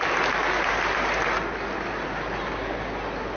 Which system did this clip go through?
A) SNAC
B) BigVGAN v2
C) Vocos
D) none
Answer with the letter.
D